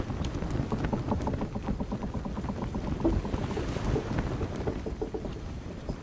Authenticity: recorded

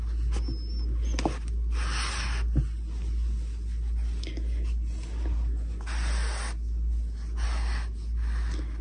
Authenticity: recorded